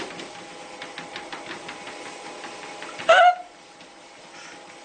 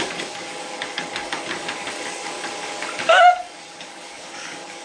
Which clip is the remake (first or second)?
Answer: second